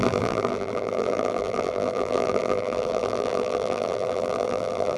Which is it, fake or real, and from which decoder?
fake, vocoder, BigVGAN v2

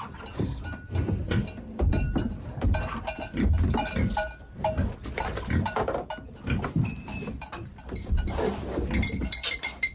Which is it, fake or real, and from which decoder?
fake, vocoder, BigVGAN v2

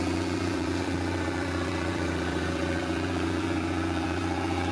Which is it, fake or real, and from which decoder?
fake, vocoder, BigVGAN v2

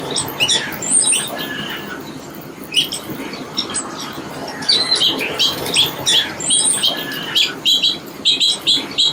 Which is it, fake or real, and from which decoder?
fake, vocoder, BigVGAN v2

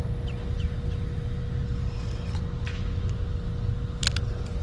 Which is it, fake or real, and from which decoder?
real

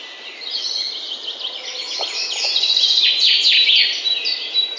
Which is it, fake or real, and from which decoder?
fake, vocoder, BigVGAN v2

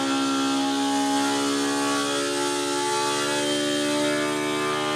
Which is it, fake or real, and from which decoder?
real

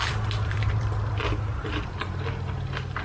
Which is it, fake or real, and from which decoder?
fake, vocoder, BigVGAN v2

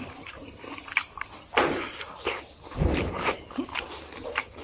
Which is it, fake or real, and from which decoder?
fake, vocoder, BigVGAN v2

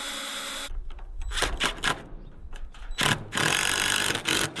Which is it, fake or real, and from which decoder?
real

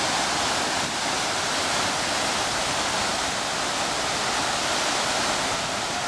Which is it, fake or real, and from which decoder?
real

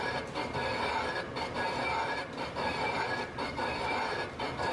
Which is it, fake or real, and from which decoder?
real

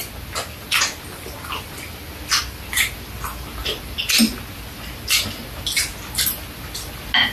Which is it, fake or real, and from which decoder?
real